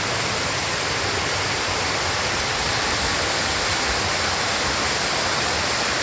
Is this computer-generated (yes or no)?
no